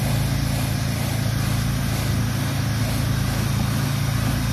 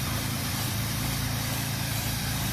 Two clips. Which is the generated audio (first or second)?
second